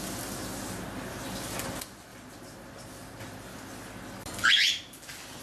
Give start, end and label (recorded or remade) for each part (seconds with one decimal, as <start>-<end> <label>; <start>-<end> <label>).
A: 0.0-5.4 recorded